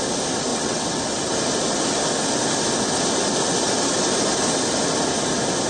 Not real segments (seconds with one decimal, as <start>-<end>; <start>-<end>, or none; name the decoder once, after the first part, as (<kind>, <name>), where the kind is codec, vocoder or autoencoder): 0.5-1.0 (vocoder, WaveNeXt)